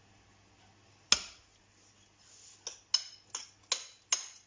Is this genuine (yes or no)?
yes